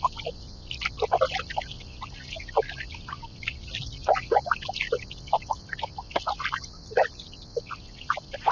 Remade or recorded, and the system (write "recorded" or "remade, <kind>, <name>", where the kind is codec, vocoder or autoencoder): recorded